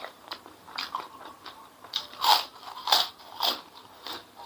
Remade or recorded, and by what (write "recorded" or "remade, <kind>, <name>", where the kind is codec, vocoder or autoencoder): remade, vocoder, BigVGAN v2